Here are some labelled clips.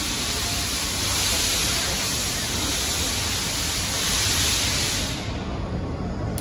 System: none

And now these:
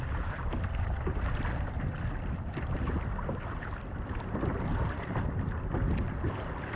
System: vocoder, BigVGAN v2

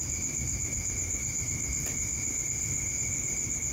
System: none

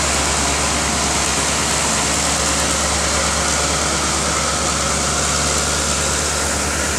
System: none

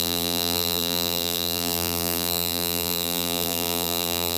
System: vocoder, BigVGAN v2